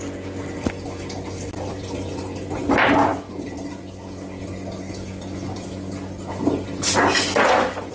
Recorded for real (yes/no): yes